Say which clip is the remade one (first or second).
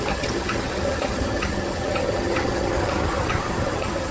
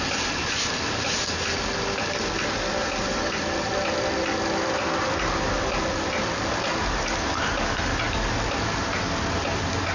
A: first